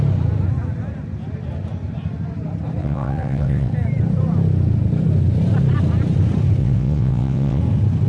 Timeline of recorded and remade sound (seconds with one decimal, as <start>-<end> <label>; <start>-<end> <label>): 0.0-2.8 recorded; 2.8-3.7 remade; 3.7-6.6 recorded; 6.6-7.6 remade; 7.6-8.1 recorded